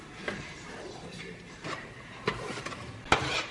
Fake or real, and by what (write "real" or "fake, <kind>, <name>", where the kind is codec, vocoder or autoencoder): fake, vocoder, BigVGAN v2